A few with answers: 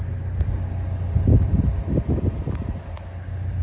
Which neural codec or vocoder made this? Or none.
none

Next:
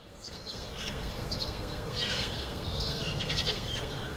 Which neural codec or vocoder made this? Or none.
codec, SNAC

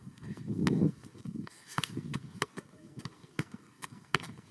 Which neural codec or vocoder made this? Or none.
codec, SNAC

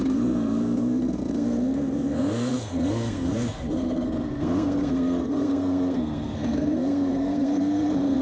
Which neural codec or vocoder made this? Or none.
codec, SNAC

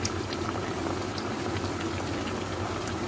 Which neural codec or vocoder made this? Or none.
none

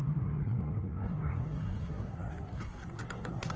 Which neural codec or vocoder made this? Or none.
codec, SNAC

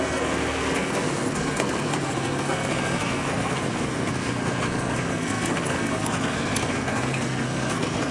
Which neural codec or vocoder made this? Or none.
codec, SNAC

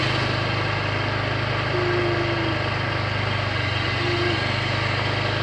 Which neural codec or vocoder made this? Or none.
none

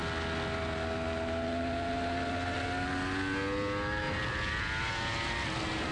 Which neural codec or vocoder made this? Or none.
none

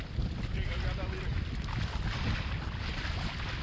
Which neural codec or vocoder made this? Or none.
none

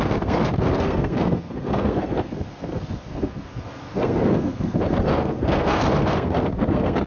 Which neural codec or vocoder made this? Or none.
codec, SNAC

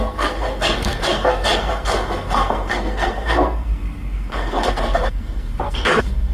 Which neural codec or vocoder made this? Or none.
codec, SNAC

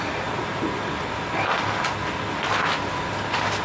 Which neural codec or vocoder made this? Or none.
none